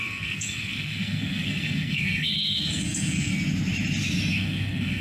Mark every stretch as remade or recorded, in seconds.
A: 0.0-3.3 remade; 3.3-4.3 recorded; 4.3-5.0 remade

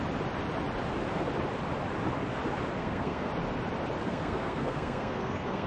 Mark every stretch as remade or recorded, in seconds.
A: 0.0-2.8 recorded; 2.8-3.3 remade; 3.3-4.1 recorded; 4.1-5.7 remade